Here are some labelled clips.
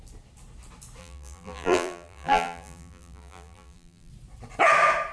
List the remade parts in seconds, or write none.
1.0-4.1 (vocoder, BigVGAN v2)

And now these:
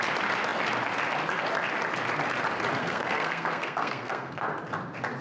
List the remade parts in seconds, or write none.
2.8-4.5 (codec, SNAC)

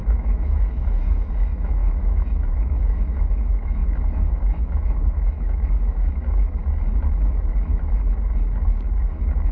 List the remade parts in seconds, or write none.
0.0-6.6 (autoencoder, DAC-VAE); 9.0-9.5

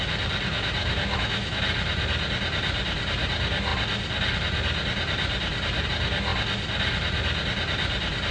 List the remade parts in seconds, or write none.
0.8-1.6 (autoencoder, DAC-VAE)